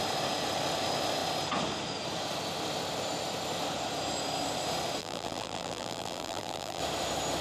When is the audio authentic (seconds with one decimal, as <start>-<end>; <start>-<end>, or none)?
0.0-5.0; 6.8-7.4